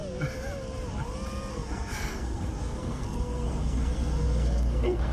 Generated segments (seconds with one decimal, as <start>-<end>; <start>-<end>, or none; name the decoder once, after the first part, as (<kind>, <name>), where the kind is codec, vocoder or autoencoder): 1.5-5.1 (codec, SNAC)